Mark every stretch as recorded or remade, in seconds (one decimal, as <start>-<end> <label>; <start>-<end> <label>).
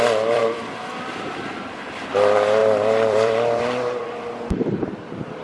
0.0-5.4 remade